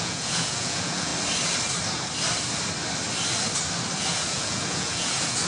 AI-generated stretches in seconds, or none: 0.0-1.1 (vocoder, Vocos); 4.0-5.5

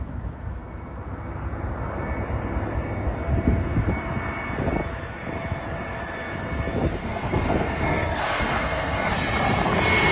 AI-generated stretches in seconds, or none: 7.0-9.1 (codec, SNAC)

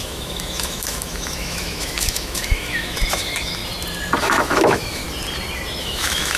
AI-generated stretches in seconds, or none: 0.0-3.6 (autoencoder, DAC-VAE); 4.2-5.0; 5.8-6.4

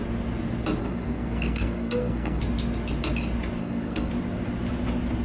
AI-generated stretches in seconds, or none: 0.8-2.4 (codec, SNAC); 3.6-4.1

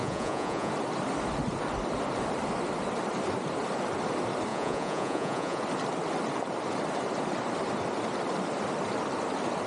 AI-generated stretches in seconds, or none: 0.0-0.7 (vocoder, Vocos); 4.5-5.6